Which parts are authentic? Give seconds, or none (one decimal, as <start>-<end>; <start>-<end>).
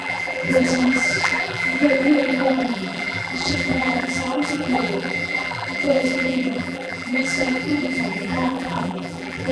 none